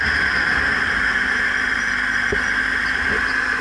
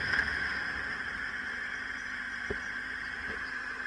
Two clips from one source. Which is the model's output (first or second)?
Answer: second